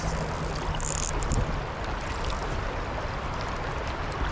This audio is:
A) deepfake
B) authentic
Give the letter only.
B